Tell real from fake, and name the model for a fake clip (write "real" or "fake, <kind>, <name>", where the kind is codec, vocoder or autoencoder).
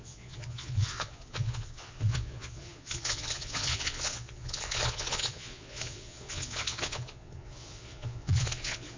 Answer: fake, vocoder, Vocos